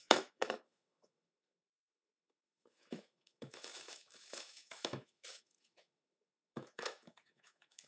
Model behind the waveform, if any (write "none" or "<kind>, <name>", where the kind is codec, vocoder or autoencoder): autoencoder, DAC-VAE